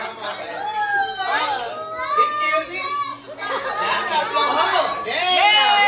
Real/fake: real